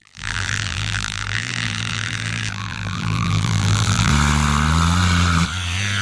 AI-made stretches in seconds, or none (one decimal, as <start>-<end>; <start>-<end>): 0.0-4.1